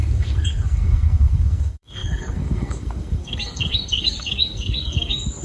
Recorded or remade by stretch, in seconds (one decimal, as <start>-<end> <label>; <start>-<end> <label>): 0.0-5.4 remade